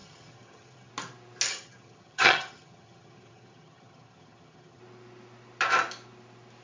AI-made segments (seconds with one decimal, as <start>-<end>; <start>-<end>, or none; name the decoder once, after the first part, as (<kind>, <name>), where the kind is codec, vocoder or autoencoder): 0.0-0.9 (vocoder, HiFi-GAN); 1.5-4.8